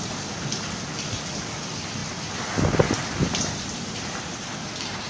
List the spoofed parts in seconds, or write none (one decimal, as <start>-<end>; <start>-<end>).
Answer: 2.0-5.1